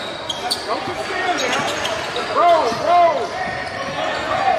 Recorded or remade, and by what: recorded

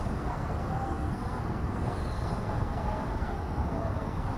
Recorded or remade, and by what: remade, codec, SNAC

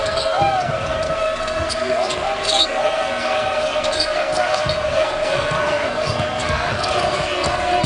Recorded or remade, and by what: remade, codec, SNAC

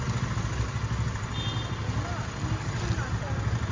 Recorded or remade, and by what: recorded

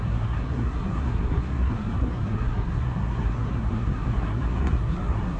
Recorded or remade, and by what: remade, codec, SNAC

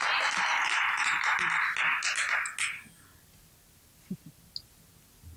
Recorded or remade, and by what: recorded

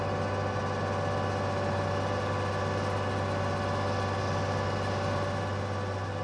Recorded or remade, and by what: recorded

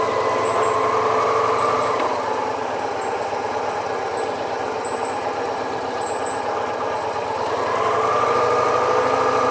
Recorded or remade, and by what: recorded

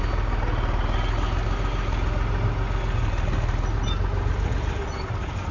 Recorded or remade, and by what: recorded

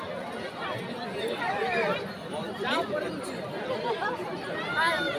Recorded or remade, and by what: remade, vocoder, BigVGAN v2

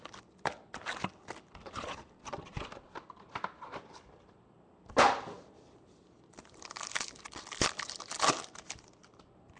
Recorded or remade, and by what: recorded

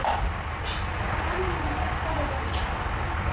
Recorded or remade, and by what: recorded